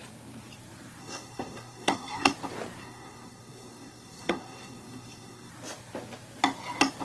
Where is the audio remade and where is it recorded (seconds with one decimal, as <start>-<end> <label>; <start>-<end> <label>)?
0.0-1.0 recorded; 1.0-2.3 remade; 2.3-2.8 recorded; 2.8-5.5 remade; 5.5-7.0 recorded